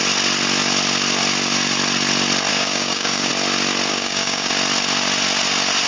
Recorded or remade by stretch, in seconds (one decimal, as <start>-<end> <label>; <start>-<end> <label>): 0.0-2.5 recorded; 2.5-3.3 remade; 3.3-3.9 recorded; 3.9-4.5 remade; 4.5-5.9 recorded